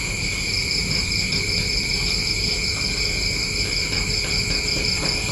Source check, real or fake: fake